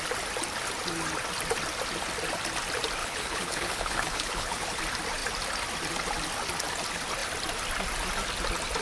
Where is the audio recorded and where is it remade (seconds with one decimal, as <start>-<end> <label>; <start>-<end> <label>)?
0.0-3.0 recorded; 3.0-4.8 remade; 4.8-8.8 recorded